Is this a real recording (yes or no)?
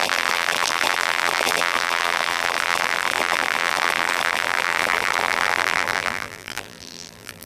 no